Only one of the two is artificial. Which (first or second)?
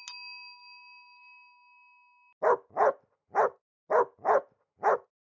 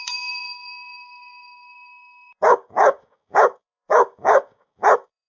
second